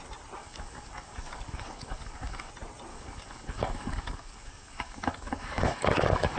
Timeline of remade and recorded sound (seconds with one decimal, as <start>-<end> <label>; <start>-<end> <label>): 0.0-0.4 recorded; 0.4-2.5 remade; 2.5-2.9 recorded; 2.9-6.4 remade